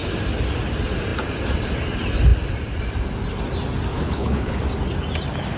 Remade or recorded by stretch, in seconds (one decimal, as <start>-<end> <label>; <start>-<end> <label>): 0.0-3.9 recorded; 3.9-4.6 remade; 4.6-5.6 recorded